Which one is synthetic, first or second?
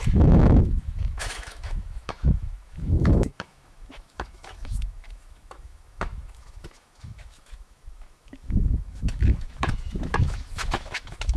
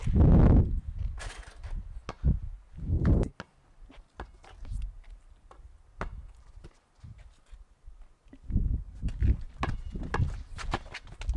first